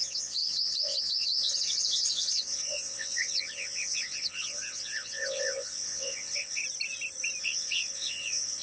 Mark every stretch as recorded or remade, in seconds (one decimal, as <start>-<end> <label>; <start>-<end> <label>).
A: 0.0-6.6 remade; 6.6-7.4 recorded; 7.4-8.6 remade